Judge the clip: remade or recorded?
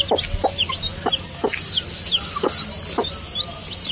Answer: recorded